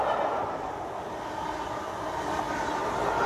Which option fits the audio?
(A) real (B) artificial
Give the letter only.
A